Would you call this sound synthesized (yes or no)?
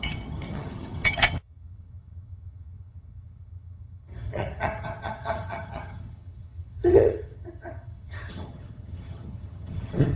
yes